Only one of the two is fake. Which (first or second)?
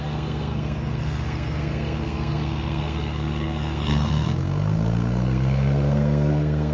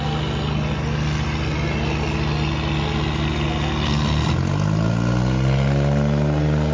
first